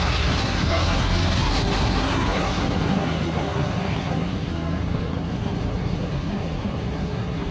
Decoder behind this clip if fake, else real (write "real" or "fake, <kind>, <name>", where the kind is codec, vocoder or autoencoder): fake, codec, SNAC